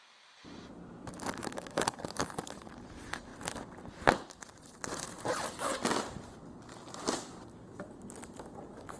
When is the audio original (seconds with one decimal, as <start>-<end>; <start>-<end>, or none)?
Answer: 0.0-1.4; 2.3-9.0